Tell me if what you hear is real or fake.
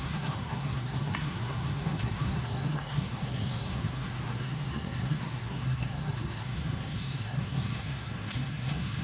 fake